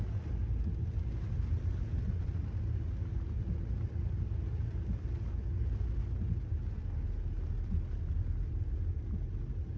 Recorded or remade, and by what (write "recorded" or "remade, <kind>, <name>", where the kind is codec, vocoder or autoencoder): recorded